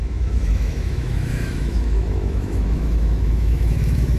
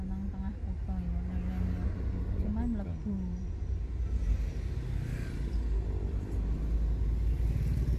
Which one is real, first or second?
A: second